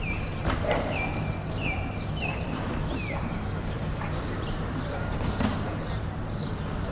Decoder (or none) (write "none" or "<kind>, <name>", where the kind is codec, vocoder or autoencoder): vocoder, BigVGAN v2